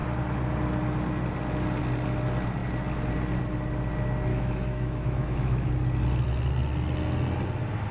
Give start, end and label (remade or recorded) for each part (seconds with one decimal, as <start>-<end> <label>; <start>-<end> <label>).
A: 0.0-4.3 recorded; 4.3-5.7 remade; 5.7-7.9 recorded